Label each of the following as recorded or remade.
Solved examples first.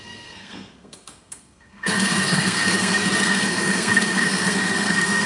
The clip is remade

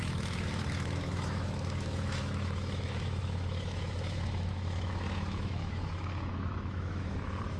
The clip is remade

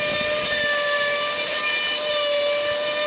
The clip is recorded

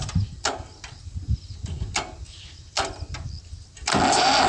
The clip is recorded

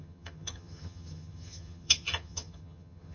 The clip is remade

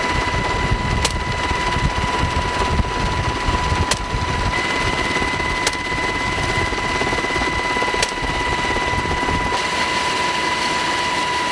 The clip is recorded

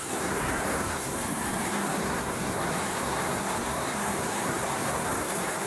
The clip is remade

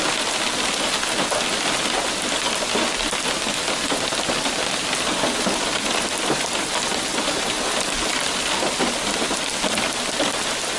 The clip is recorded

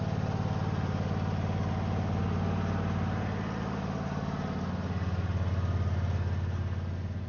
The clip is recorded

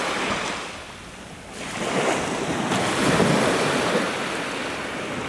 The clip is recorded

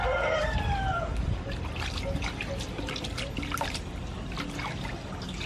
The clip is remade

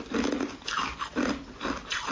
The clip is recorded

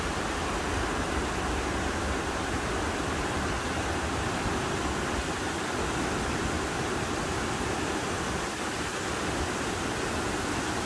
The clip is recorded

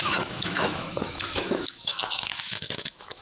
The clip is remade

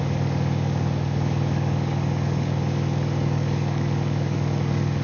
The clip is remade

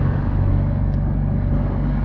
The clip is remade